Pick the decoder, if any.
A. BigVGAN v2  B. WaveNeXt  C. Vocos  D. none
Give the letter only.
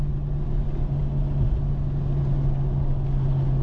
D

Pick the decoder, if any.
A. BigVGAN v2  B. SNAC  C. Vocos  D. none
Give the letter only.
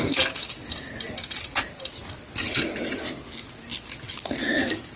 D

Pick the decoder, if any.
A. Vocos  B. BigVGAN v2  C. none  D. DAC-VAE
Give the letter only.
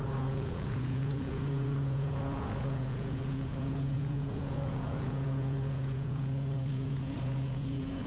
A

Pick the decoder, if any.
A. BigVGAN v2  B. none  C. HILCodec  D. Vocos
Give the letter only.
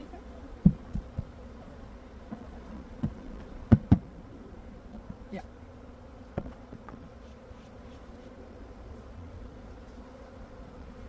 D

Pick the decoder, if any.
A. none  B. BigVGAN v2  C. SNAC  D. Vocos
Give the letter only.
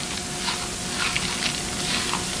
A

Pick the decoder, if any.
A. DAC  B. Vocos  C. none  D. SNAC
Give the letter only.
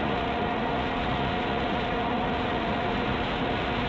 B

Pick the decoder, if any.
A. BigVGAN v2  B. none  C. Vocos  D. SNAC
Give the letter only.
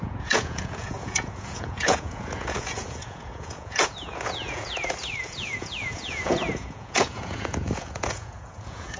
C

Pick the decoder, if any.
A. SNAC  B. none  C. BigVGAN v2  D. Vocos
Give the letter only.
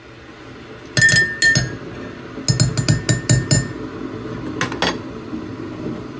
B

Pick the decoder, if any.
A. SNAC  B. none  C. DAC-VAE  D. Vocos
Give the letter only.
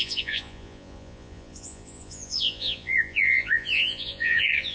D